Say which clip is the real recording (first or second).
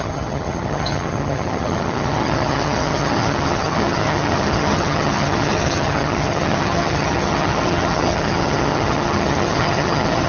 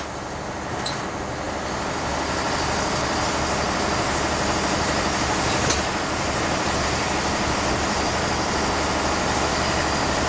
second